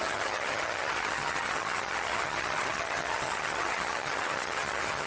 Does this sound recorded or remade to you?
remade